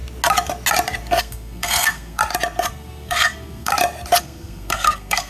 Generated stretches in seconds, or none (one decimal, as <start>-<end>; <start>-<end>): 1.2-2.2; 2.7-3.7; 4.2-5.3